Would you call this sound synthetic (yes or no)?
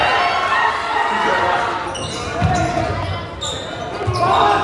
no